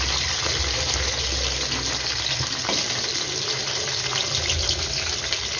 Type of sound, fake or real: real